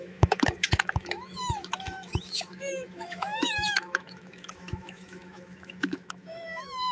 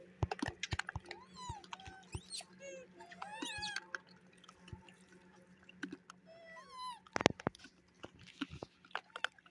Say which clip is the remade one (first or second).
first